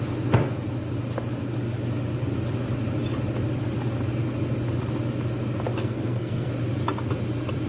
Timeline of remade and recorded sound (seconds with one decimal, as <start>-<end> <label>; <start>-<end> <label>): 0.0-5.8 recorded; 5.8-6.5 remade; 6.5-7.7 recorded